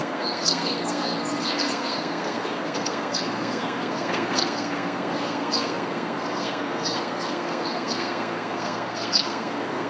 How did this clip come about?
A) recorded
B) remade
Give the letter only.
B